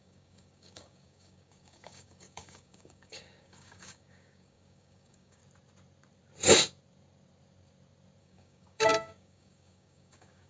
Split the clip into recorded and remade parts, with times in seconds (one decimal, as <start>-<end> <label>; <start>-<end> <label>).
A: 0.0-5.4 remade; 5.4-8.2 recorded; 8.2-10.5 remade

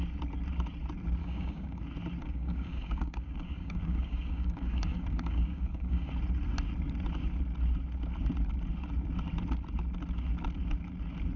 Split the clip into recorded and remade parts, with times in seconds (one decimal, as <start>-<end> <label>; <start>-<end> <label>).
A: 0.0-1.2 recorded; 1.2-1.8 remade; 1.8-2.2 recorded; 2.2-6.1 remade; 6.1-11.4 recorded

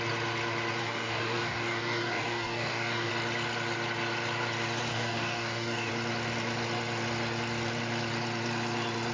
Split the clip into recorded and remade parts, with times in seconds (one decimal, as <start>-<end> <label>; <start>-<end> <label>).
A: 0.0-0.8 recorded; 0.8-3.1 remade; 3.1-4.9 recorded; 4.9-5.9 remade; 5.9-9.1 recorded

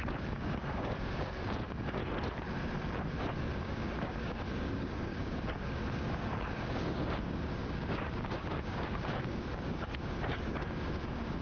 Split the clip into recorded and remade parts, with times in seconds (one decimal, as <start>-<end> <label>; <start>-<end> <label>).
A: 0.0-2.0 remade; 2.0-3.2 recorded; 3.2-11.4 remade

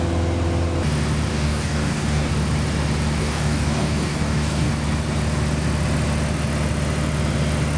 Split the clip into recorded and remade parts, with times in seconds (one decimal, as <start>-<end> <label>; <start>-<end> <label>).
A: 0.0-1.3 recorded; 1.3-2.3 remade; 2.3-3.2 recorded; 3.2-4.7 remade; 4.7-7.8 recorded

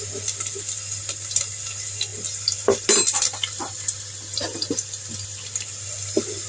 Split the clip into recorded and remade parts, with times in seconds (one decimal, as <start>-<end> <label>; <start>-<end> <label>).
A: 0.0-6.5 recorded